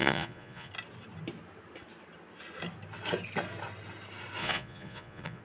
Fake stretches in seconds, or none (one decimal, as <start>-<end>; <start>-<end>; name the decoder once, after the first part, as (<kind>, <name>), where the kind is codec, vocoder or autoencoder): 0.0-0.7 (vocoder, Vocos); 4.4-5.4